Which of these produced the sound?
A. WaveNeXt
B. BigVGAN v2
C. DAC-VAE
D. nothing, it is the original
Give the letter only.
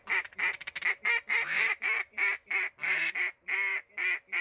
B